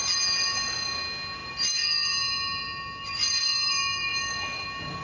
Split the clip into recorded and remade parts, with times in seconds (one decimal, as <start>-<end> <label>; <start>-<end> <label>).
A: 0.0-5.0 recorded